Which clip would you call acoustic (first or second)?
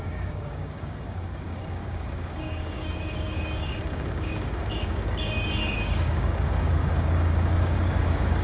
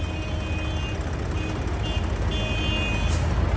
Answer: second